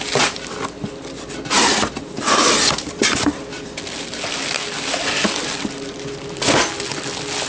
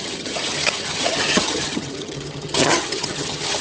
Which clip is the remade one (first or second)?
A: second